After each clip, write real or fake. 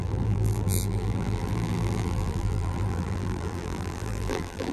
fake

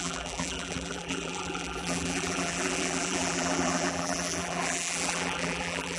fake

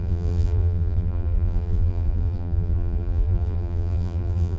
fake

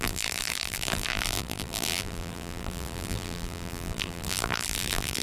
fake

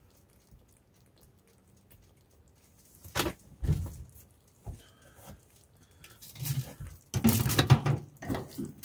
real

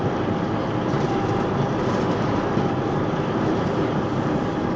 fake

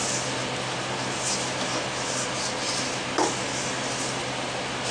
real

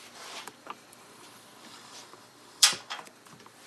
fake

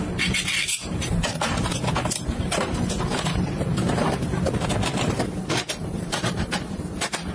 fake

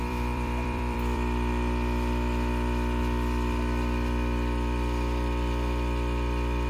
fake